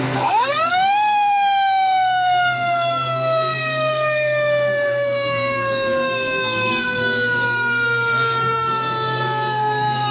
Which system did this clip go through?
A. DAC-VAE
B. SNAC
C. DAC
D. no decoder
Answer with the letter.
B